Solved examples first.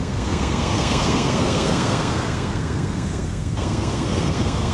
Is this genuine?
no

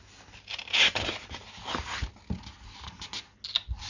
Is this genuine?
yes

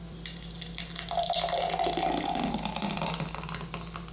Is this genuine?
yes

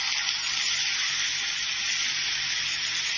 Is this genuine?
yes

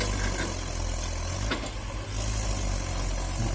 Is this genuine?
yes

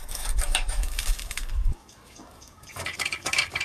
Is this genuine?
no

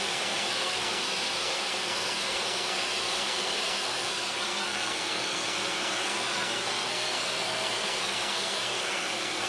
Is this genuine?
no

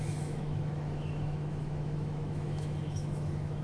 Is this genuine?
no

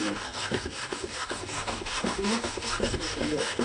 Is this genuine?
no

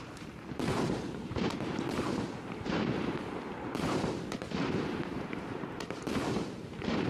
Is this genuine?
no